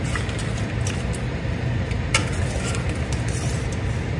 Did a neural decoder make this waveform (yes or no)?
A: no